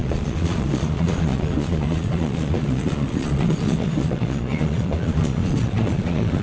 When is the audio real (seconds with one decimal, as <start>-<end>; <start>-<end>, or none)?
none